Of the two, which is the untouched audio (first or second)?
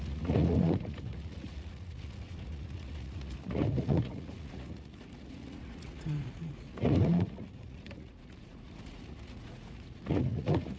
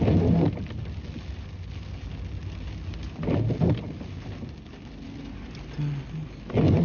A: second